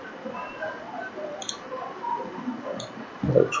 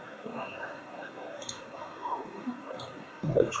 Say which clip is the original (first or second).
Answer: first